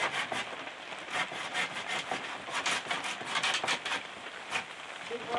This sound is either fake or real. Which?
real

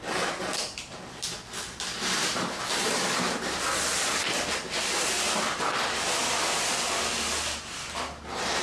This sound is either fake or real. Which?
real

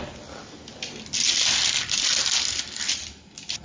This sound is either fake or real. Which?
real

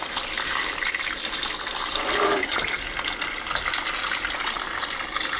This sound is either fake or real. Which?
real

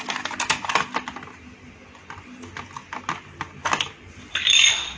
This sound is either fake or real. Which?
real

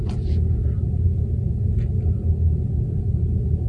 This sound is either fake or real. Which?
real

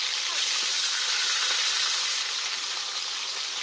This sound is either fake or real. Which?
real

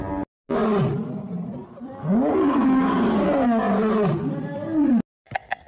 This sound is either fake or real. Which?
real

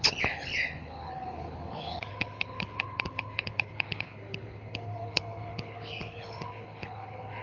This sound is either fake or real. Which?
fake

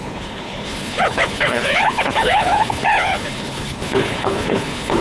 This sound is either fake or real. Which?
fake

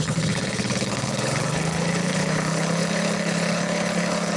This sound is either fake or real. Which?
fake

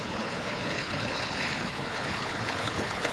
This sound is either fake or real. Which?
fake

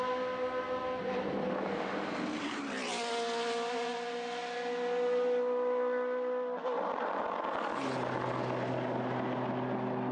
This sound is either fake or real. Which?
real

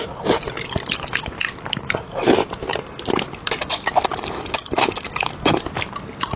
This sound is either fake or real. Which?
real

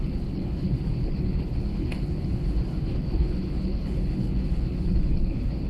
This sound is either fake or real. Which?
fake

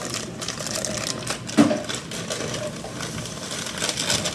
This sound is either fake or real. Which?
real